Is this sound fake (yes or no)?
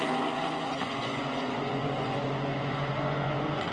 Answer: yes